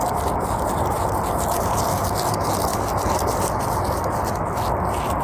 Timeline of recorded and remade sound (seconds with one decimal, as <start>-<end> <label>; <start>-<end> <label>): 0.0-5.2 recorded